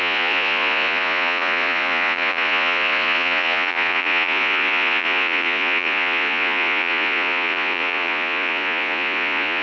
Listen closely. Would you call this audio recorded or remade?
remade